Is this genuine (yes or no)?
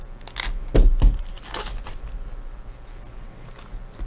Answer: yes